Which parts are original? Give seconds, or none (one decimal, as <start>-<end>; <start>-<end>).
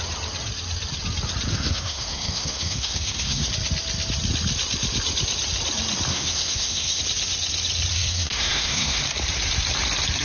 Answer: 0.0-1.5; 3.5-6.1; 7.0-7.9; 9.0-10.2